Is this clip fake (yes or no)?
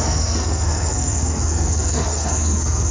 yes